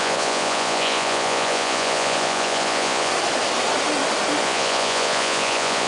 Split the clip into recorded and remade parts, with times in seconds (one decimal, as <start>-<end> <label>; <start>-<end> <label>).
0.0-3.1 remade; 3.1-4.4 recorded; 4.4-5.9 remade